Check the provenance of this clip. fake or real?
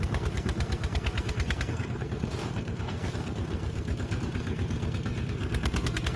fake